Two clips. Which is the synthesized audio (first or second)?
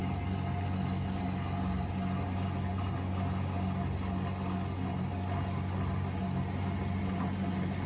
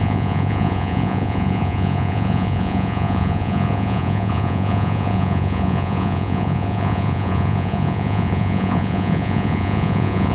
second